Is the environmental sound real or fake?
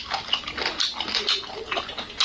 real